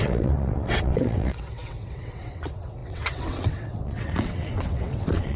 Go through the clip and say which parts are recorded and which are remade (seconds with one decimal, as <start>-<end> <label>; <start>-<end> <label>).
0.0-5.4 remade